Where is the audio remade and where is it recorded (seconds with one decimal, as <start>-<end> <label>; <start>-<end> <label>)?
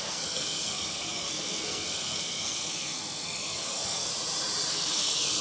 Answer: 0.0-4.1 remade; 4.1-4.7 recorded; 4.7-5.4 remade